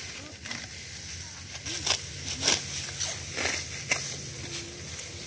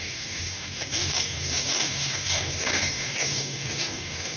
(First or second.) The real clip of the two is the first